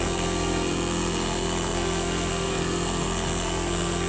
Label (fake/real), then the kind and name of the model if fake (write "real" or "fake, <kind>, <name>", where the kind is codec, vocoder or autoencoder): fake, codec, SNAC